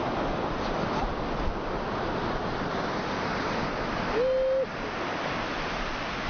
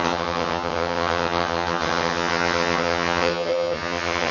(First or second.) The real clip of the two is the first